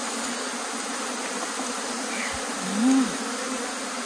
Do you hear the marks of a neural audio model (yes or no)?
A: no